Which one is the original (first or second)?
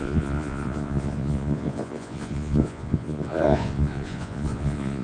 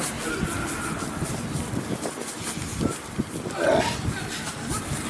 second